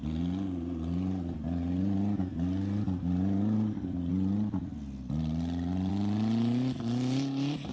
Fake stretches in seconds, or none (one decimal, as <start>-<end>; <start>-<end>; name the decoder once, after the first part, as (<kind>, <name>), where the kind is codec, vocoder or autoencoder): none